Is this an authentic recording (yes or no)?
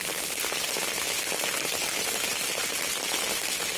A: yes